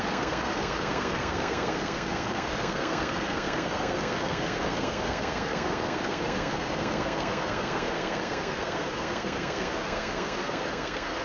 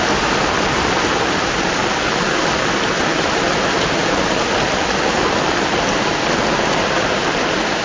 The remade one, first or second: first